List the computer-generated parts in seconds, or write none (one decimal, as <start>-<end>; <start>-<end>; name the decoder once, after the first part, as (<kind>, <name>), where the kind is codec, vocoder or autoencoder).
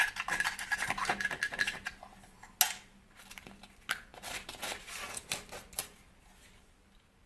none